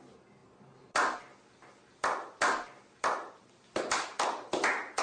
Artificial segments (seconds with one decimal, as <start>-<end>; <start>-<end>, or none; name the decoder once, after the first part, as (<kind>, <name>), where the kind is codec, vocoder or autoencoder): none